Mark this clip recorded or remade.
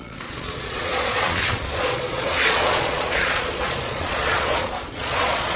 remade